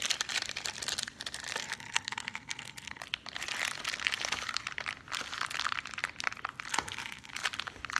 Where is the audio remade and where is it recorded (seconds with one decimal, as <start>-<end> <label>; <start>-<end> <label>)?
0.0-1.6 recorded; 1.6-3.0 remade; 3.0-6.7 recorded; 6.7-7.3 remade; 7.3-8.0 recorded